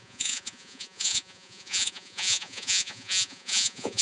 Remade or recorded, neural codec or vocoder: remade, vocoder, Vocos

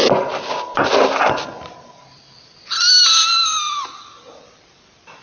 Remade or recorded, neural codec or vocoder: recorded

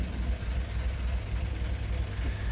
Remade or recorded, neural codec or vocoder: recorded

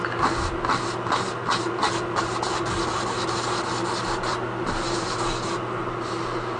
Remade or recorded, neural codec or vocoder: recorded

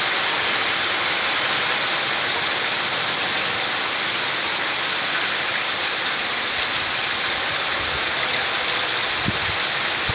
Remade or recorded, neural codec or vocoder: recorded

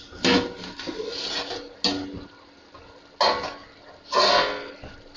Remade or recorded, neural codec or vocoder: recorded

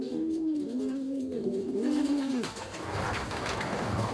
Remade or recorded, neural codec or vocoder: remade, codec, DAC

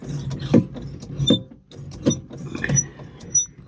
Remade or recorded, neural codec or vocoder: recorded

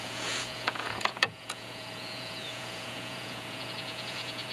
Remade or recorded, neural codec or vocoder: remade, vocoder, Vocos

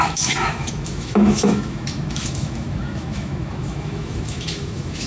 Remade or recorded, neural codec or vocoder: remade, autoencoder, DAC-VAE